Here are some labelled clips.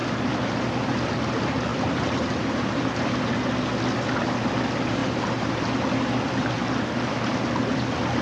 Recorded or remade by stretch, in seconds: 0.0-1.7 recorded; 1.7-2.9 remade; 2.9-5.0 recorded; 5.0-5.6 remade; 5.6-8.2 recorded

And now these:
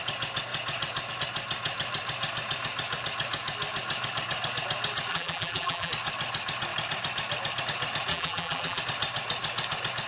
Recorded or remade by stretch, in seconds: 0.0-5.1 recorded; 5.1-5.9 remade; 5.9-8.1 recorded; 8.1-8.8 remade; 8.8-10.1 recorded

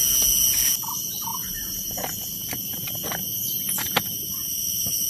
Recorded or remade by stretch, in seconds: 0.0-0.9 recorded; 0.9-5.1 remade

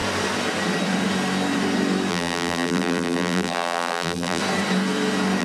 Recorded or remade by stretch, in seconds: 0.0-2.1 recorded; 2.1-4.4 remade; 4.4-5.4 recorded

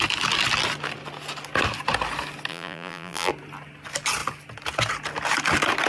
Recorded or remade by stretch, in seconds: 0.0-2.5 recorded; 2.5-3.3 remade; 3.3-5.9 recorded

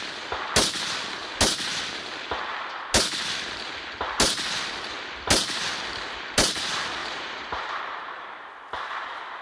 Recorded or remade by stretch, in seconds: 0.0-7.0 recorded; 7.0-7.8 remade; 7.8-9.4 recorded

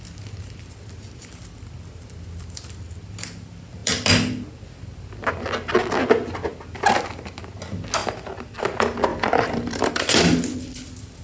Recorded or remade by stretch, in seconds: 0.0-3.8 recorded; 3.8-4.5 remade; 4.5-8.0 recorded; 8.0-8.6 remade; 8.6-9.1 recorded; 9.1-9.9 remade; 9.9-11.2 recorded